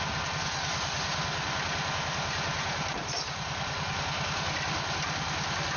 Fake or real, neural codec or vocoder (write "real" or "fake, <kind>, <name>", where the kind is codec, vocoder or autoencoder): real